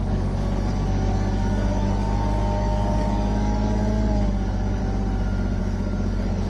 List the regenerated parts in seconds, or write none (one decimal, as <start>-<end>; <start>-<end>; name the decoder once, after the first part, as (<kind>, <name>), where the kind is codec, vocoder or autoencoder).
0.0-4.8 (codec, DAC); 5.6-6.5